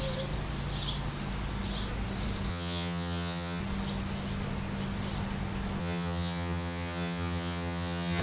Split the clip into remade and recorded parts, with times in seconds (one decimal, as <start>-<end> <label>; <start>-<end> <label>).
0.0-2.5 recorded; 2.5-3.6 remade; 3.6-5.8 recorded; 5.8-8.2 remade